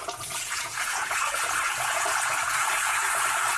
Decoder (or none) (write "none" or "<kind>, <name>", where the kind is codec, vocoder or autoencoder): vocoder, Vocos